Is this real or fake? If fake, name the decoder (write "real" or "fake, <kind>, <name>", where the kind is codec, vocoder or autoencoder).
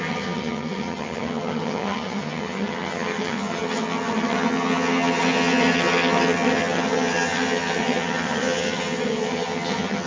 fake, vocoder, HiFi-GAN